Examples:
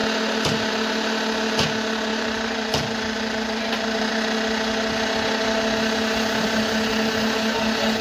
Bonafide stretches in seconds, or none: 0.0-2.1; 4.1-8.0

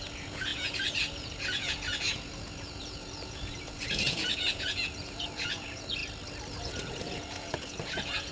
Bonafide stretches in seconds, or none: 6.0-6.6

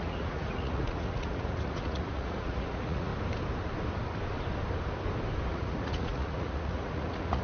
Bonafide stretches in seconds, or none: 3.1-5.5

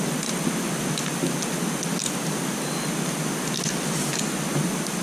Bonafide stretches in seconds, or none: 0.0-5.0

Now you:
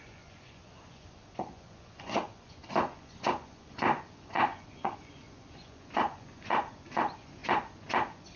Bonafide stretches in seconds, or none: none

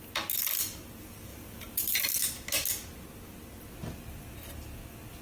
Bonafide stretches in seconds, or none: 0.0-1.3; 2.0-5.2

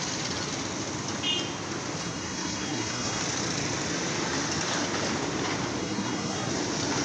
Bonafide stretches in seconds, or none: 0.0-2.0; 3.2-5.8; 6.5-7.0